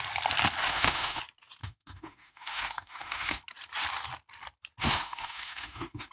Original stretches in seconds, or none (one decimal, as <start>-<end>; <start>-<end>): 0.0-0.6; 1.2-1.6; 3.4-4.8